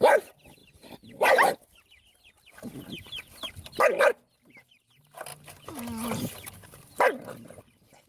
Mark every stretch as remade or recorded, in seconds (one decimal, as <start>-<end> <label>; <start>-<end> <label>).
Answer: 0.0-8.1 recorded

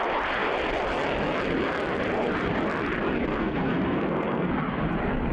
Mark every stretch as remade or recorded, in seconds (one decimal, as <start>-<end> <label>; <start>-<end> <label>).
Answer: 0.0-3.3 recorded; 3.3-4.5 remade; 4.5-5.3 recorded

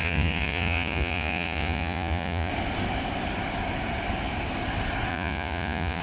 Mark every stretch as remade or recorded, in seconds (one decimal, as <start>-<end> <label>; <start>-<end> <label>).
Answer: 0.0-2.5 remade; 2.5-5.1 recorded; 5.1-6.0 remade

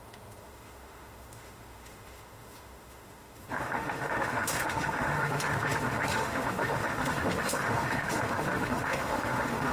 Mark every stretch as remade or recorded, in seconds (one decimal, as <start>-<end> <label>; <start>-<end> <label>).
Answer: 0.0-9.7 remade

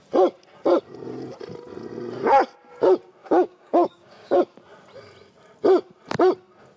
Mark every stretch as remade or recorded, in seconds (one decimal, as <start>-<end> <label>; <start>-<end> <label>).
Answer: 0.0-3.2 recorded; 3.2-4.4 remade; 4.4-6.8 recorded